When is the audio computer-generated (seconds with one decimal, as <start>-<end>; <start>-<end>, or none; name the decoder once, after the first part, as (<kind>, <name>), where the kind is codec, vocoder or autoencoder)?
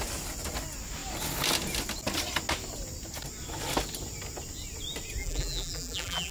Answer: 5.2-6.3 (vocoder, BigVGAN v2)